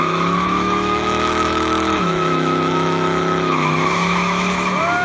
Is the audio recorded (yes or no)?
no